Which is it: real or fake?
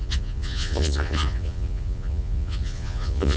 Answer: fake